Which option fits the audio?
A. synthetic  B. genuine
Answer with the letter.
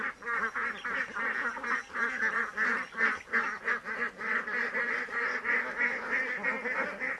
B